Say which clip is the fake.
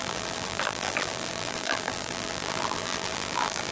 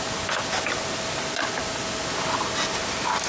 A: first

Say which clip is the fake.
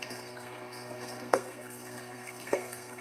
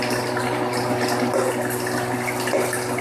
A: first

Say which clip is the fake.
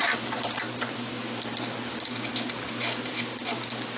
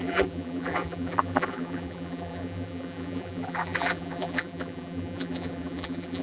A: second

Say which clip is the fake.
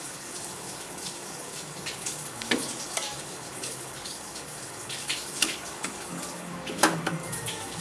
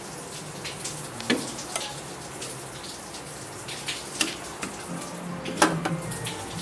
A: first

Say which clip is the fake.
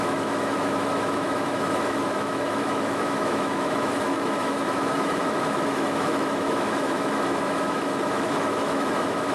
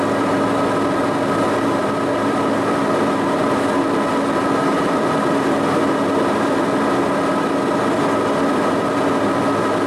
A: first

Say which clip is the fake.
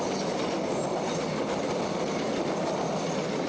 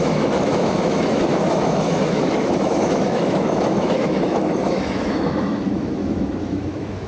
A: second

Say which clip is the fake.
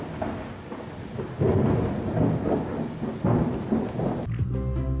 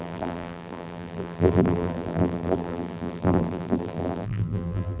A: second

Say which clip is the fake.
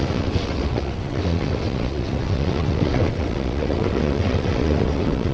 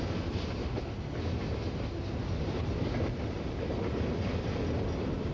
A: first